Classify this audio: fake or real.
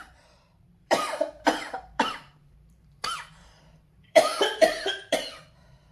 fake